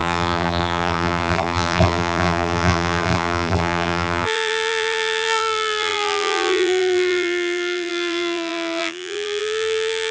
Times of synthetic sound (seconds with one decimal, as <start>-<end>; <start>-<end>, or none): 0.0-10.1